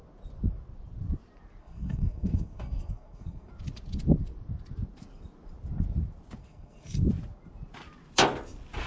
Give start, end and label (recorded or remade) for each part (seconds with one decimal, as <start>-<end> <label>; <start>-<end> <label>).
0.0-1.6 recorded; 1.6-3.5 remade; 3.5-6.4 recorded; 6.4-7.0 remade; 7.0-8.9 recorded